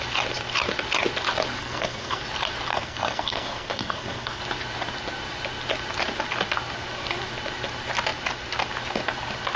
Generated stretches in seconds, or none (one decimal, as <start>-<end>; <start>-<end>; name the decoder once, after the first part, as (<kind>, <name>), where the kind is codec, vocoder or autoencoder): 1.6-2.2 (codec, SNAC); 2.7-4.4